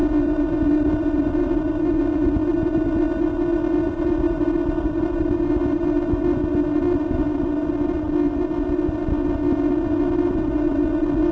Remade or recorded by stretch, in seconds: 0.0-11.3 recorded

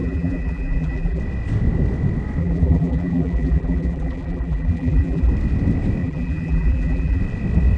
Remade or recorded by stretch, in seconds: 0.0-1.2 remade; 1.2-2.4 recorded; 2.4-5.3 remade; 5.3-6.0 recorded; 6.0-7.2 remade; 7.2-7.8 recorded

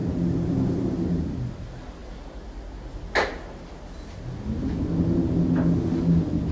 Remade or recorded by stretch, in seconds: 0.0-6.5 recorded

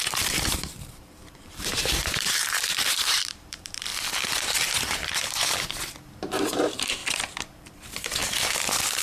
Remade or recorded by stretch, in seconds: 0.0-3.9 remade; 3.9-6.3 recorded; 6.3-7.0 remade; 7.0-7.6 recorded; 7.6-8.2 remade; 8.2-9.0 recorded

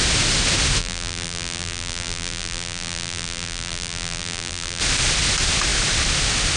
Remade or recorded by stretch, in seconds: 0.0-0.8 recorded; 0.8-4.8 remade; 4.8-6.6 recorded

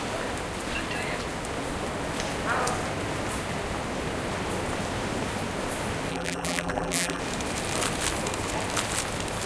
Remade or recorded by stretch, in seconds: 0.0-6.1 recorded; 6.1-7.2 remade; 7.2-9.5 recorded

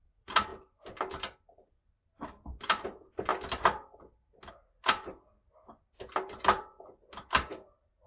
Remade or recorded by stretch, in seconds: 0.0-8.1 recorded

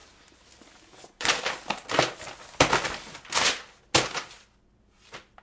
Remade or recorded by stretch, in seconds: 0.0-5.4 recorded